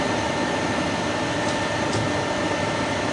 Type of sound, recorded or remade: recorded